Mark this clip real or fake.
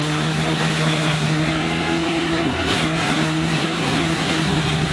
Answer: fake